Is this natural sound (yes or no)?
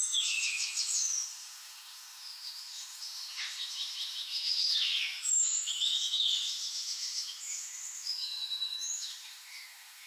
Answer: no